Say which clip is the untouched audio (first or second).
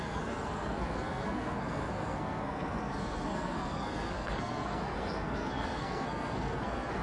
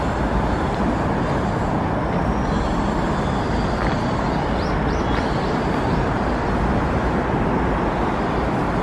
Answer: second